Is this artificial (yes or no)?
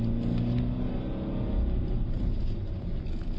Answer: no